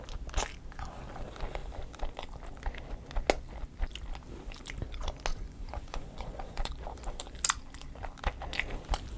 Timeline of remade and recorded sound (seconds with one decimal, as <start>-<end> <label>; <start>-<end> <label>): 0.0-5.3 recorded; 5.3-6.7 remade; 6.7-9.2 recorded